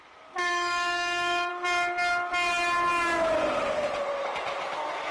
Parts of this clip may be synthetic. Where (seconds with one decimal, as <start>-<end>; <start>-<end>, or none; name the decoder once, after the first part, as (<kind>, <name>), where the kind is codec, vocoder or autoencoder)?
0.0-1.5 (autoencoder, DAC-VAE); 4.6-5.1